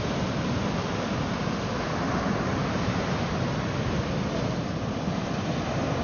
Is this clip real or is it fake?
real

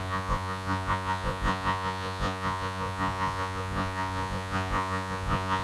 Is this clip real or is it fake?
fake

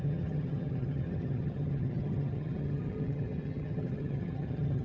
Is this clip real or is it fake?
fake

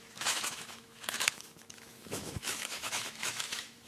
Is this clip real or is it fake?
fake